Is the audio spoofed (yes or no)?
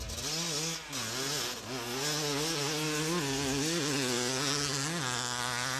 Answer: no